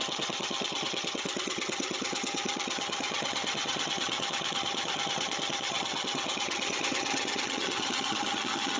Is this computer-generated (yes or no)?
yes